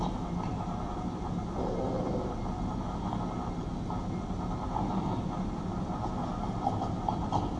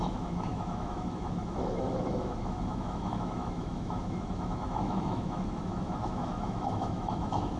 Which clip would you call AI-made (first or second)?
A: second